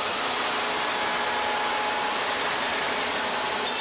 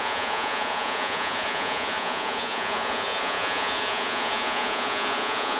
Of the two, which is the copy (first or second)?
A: second